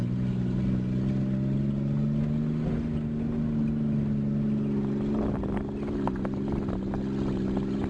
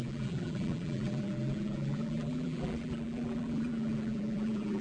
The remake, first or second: second